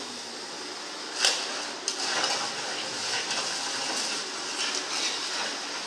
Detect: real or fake real